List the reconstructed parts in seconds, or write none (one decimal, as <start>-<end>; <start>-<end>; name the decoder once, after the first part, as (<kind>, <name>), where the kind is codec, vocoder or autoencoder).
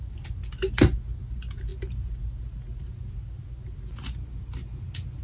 none